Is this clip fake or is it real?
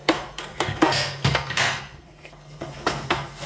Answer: fake